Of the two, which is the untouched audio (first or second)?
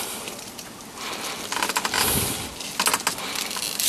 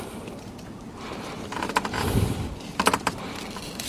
first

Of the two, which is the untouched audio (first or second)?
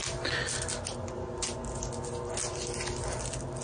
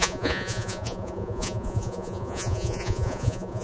first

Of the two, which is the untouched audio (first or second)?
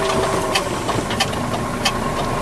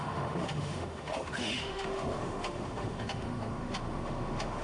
first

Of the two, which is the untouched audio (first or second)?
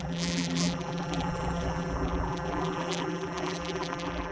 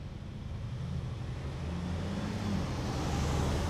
second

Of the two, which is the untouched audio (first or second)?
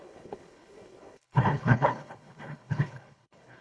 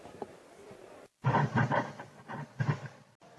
second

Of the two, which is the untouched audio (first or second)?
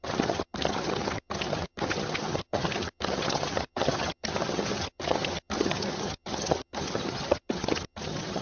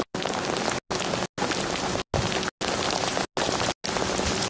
second